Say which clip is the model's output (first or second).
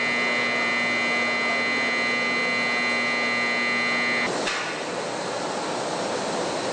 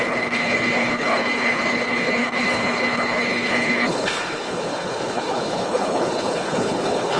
second